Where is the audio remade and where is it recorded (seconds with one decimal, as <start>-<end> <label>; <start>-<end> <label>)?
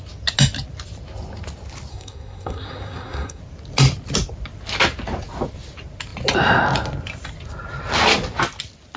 0.0-1.9 recorded; 1.9-3.4 remade; 3.4-9.0 recorded